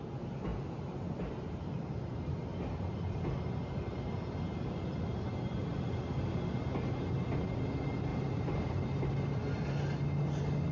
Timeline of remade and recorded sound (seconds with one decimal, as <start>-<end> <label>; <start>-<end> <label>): 0.0-8.1 recorded; 8.1-9.1 remade; 9.1-10.7 recorded